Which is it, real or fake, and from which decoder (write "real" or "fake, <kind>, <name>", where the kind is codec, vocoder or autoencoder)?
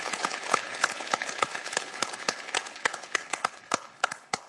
fake, codec, HILCodec